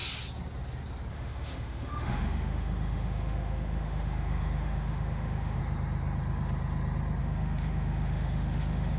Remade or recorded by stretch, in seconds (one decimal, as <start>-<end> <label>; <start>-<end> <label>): 0.0-1.1 recorded; 1.1-5.6 remade; 5.6-7.2 recorded; 7.2-9.0 remade